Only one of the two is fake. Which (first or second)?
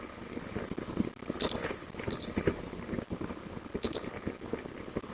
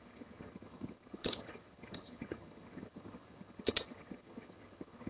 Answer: second